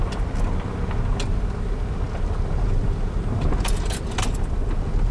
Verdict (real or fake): real